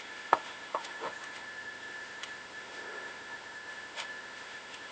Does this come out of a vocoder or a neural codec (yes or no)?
yes